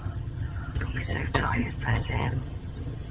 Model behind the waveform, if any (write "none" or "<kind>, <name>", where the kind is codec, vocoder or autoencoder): vocoder, HiFi-GAN